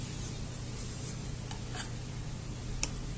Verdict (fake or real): real